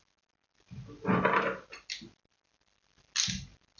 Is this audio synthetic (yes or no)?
no